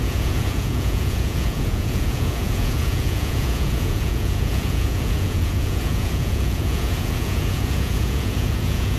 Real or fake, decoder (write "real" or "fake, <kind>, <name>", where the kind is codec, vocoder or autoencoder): fake, vocoder, Vocos